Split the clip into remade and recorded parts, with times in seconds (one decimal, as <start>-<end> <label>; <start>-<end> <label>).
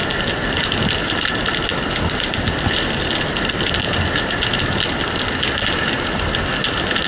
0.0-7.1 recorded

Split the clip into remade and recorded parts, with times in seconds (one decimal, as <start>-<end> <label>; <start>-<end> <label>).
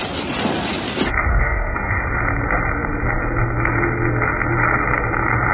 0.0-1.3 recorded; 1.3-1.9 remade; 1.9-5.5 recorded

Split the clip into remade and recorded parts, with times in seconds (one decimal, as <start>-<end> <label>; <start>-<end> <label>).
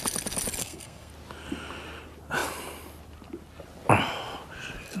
0.0-0.6 recorded; 0.6-1.1 remade; 1.1-5.0 recorded